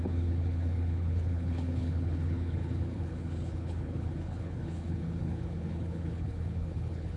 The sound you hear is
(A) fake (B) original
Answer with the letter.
A